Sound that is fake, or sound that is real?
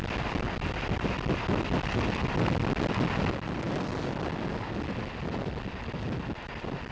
real